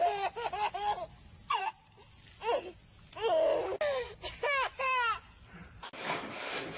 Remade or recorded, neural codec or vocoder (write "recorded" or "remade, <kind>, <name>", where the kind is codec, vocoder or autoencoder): recorded